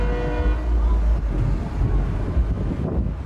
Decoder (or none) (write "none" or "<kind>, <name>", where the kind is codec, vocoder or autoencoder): none